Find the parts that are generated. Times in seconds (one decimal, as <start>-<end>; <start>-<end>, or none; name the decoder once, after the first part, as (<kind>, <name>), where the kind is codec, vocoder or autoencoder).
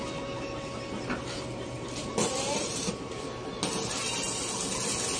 2.0-3.2 (vocoder, BigVGAN v2)